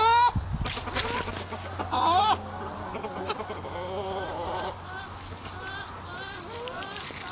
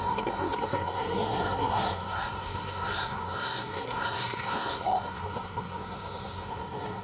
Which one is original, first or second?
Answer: first